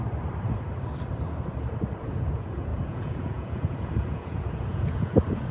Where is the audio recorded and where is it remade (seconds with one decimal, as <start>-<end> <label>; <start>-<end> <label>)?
0.0-2.0 recorded; 2.0-5.5 remade